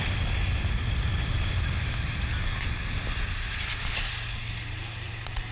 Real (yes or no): yes